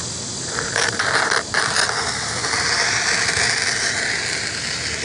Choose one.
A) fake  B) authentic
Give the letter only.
B